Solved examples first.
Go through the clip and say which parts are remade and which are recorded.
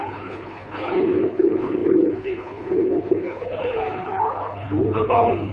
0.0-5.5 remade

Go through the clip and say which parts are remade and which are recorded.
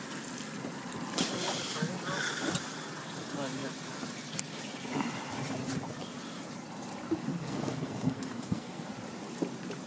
0.0-7.3 recorded; 7.3-8.9 remade; 8.9-9.9 recorded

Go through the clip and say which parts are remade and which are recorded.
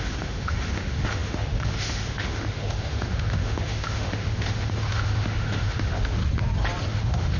0.0-6.2 remade; 6.2-6.9 recorded; 6.9-7.4 remade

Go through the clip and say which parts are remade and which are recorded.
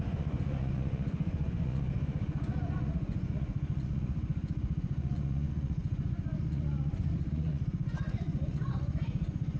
0.0-9.6 remade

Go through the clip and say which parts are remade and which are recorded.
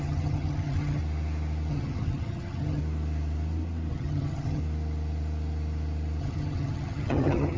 0.0-1.0 remade; 1.0-1.7 recorded; 1.7-2.8 remade; 2.8-3.9 recorded; 3.9-4.6 remade; 4.6-6.2 recorded; 6.2-7.6 remade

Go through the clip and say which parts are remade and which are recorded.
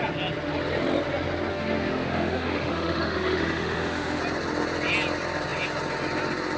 0.0-1.5 recorded; 1.5-4.2 remade; 4.2-6.6 recorded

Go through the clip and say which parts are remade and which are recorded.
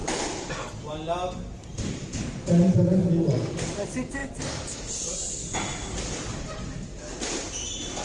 0.0-8.0 recorded